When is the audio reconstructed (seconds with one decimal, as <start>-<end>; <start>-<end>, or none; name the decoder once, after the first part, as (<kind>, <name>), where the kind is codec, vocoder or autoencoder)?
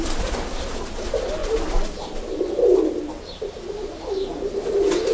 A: none